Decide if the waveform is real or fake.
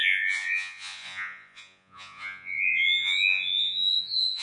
fake